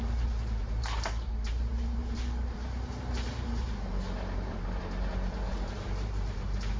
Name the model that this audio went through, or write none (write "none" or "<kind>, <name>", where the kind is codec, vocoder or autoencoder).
vocoder, BigVGAN v2